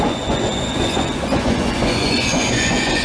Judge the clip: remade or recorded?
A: remade